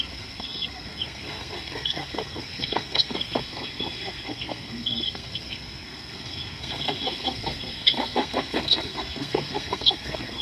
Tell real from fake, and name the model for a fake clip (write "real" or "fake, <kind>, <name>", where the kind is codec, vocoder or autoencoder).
fake, codec, SNAC